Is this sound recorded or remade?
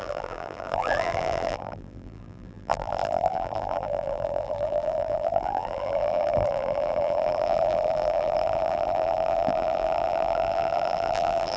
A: remade